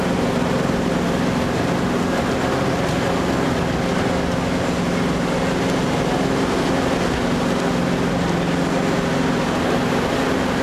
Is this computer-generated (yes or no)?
no